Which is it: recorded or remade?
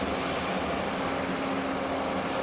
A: recorded